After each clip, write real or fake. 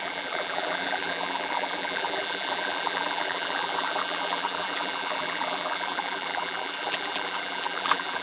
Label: fake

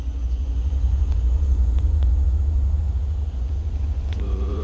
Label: fake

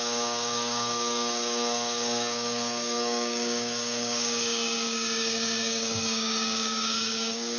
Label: fake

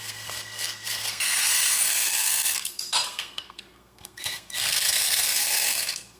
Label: fake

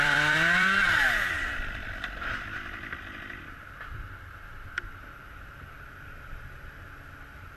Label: fake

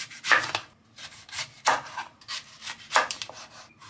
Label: fake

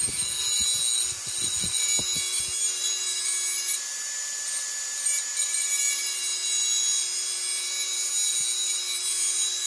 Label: real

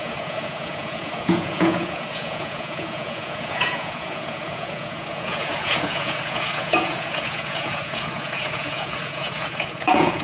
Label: fake